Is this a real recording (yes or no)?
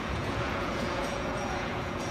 no